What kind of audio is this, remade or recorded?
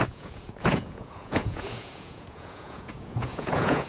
remade